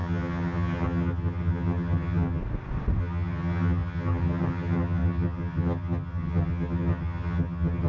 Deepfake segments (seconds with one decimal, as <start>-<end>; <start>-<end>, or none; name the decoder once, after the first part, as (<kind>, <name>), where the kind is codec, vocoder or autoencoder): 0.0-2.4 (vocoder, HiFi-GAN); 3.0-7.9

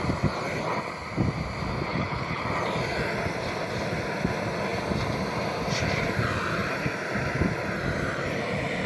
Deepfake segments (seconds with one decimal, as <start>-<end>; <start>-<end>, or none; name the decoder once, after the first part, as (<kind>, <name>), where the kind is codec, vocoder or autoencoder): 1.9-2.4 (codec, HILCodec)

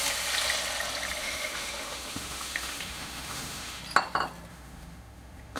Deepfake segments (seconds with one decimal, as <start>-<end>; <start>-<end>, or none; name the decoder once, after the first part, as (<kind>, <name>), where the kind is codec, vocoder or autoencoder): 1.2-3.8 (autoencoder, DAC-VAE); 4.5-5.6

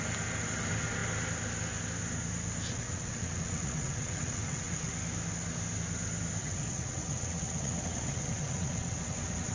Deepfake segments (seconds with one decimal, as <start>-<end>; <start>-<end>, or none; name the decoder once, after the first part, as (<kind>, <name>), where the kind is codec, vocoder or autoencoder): 2.7-4.9 (vocoder, WaveNeXt); 6.4-9.5

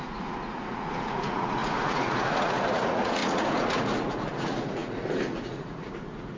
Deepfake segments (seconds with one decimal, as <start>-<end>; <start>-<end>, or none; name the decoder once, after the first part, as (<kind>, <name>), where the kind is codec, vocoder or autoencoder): 0.0-6.4 (vocoder, Vocos)